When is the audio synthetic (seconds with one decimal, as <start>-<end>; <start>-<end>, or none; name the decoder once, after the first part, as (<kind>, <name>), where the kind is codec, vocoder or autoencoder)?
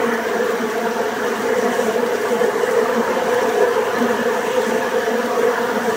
2.4-3.2 (vocoder, BigVGAN v2)